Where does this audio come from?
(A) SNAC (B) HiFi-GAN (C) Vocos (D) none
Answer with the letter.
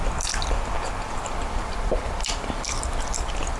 D